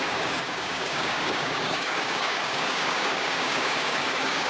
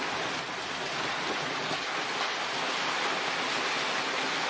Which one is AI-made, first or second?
first